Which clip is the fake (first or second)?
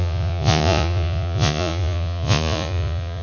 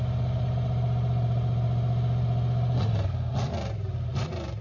first